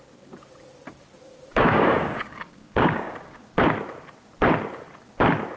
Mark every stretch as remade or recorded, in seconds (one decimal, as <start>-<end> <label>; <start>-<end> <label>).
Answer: 0.0-1.5 recorded; 1.5-3.4 remade; 3.4-5.6 recorded